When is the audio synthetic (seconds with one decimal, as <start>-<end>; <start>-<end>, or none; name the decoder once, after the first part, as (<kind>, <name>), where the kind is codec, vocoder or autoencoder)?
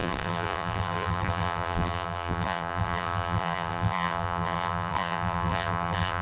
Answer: 0.0-6.2 (vocoder, BigVGAN v2)